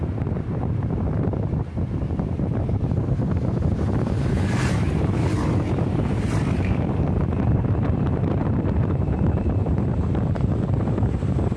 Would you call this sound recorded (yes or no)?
no